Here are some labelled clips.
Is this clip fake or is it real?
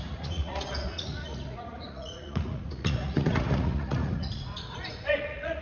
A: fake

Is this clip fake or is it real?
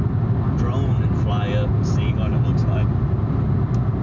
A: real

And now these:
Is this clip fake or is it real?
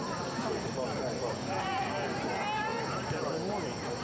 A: real